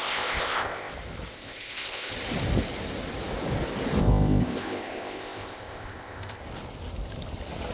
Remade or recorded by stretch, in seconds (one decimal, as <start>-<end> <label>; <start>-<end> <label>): 0.0-0.9 remade; 0.9-1.3 recorded; 1.3-2.1 remade; 2.1-4.0 recorded; 4.0-6.4 remade; 6.4-7.7 recorded